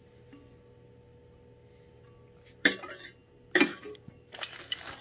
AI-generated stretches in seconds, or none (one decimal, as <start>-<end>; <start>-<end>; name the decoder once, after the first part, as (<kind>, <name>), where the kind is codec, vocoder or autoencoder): none